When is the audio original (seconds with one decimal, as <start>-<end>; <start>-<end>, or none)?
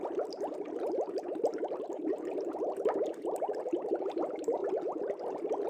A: 4.6-5.2